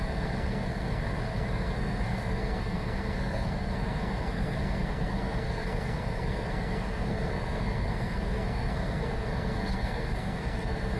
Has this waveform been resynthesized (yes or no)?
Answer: yes